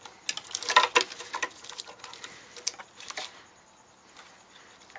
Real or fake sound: real